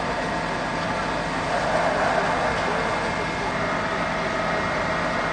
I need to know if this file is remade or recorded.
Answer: recorded